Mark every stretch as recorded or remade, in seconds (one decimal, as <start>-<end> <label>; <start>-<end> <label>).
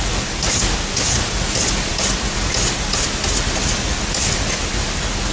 0.0-5.3 recorded